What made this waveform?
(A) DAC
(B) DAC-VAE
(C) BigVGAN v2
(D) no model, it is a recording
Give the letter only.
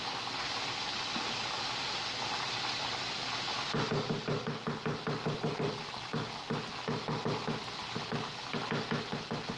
D